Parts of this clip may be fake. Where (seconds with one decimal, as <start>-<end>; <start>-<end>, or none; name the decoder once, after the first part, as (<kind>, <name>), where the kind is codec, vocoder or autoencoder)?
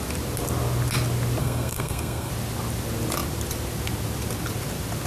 1.4-2.3 (codec, SNAC)